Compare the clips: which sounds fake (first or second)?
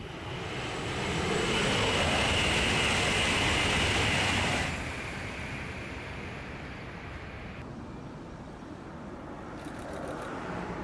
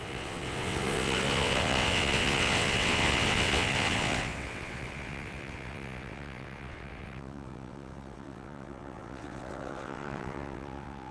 second